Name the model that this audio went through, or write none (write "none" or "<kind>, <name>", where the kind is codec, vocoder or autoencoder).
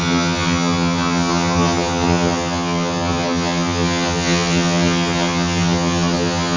vocoder, HiFi-GAN